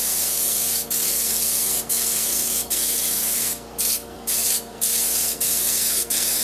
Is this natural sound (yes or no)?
no